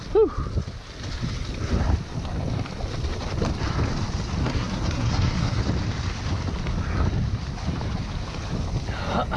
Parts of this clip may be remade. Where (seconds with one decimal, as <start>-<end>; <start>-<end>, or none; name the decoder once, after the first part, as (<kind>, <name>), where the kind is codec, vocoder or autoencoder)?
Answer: 4.4-5.6 (codec, SNAC)